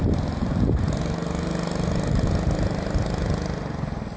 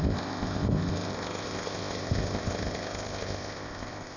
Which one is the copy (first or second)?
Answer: second